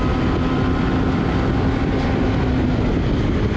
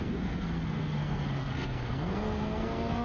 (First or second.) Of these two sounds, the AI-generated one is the second